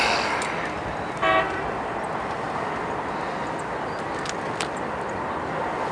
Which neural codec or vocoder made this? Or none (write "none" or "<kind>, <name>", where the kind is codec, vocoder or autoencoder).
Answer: none